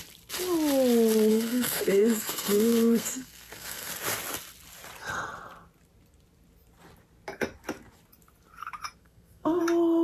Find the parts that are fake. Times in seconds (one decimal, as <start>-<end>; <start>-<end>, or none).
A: 1.3-3.9; 9.0-9.6